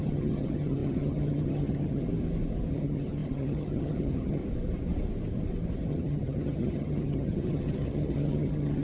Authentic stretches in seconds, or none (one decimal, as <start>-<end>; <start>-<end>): 2.0-2.7; 4.4-5.9